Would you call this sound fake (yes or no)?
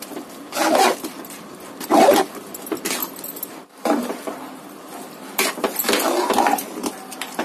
no